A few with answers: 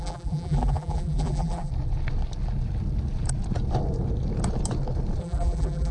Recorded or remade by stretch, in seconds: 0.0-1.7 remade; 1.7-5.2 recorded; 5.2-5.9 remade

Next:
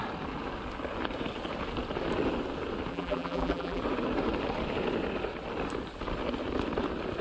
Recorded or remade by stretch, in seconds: 0.0-2.9 recorded; 2.9-3.8 remade; 3.8-7.2 recorded

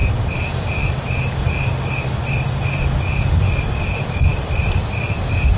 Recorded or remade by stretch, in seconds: 0.0-5.6 recorded

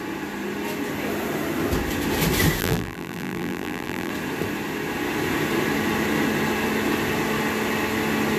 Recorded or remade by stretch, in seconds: 0.0-2.6 recorded; 2.6-4.1 remade; 4.1-8.4 recorded